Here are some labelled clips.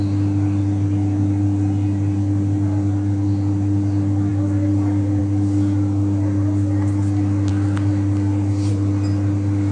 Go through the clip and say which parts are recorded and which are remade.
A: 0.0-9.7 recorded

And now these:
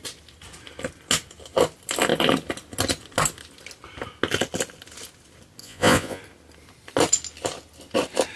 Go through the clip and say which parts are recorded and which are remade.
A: 0.0-5.6 recorded; 5.6-6.2 remade; 6.2-8.4 recorded